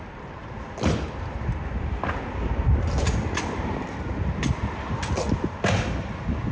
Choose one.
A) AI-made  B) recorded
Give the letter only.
B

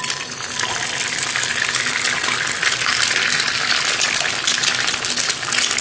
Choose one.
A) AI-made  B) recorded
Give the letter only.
B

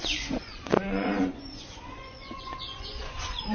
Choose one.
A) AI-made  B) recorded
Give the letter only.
A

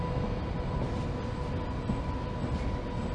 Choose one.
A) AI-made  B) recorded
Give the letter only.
B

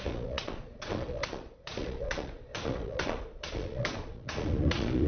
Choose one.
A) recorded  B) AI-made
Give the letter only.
B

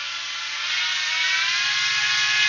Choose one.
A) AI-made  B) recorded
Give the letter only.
B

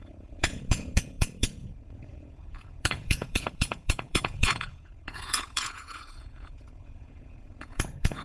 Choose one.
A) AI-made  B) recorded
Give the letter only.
A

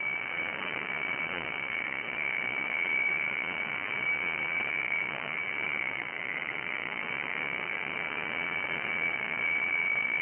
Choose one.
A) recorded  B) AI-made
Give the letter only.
B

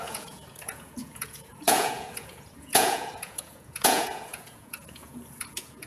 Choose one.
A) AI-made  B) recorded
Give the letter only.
A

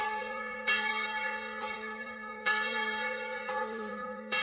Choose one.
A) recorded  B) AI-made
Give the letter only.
B